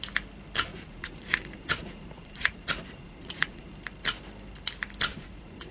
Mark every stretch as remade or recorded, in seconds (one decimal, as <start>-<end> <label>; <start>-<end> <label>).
0.0-0.7 recorded; 0.7-3.7 remade; 3.7-5.1 recorded; 5.1-5.7 remade

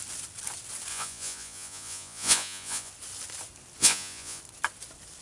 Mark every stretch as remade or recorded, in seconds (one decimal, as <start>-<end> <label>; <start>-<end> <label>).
0.0-0.9 recorded; 0.9-2.9 remade; 2.9-3.8 recorded; 3.8-4.4 remade; 4.4-5.2 recorded

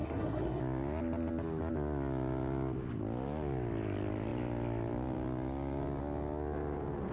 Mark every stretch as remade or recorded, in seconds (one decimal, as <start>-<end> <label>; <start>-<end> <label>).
0.0-0.6 remade; 0.6-7.1 recorded

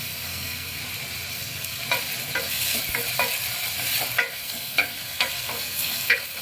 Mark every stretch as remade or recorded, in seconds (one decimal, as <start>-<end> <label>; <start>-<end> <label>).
0.0-0.8 remade; 0.8-1.3 recorded; 1.3-1.8 remade; 1.8-2.4 recorded; 2.4-2.8 remade; 2.8-4.3 recorded; 4.3-6.4 remade